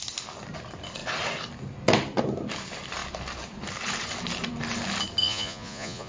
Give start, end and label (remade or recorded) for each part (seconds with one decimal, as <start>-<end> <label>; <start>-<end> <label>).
0.0-5.2 recorded; 5.2-6.1 remade